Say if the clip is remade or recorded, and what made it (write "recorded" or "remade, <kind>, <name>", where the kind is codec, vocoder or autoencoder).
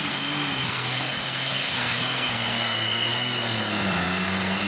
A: remade, codec, SNAC